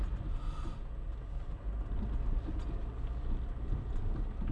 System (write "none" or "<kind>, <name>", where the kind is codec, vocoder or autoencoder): none